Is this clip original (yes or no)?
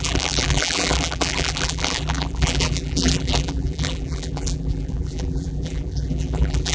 no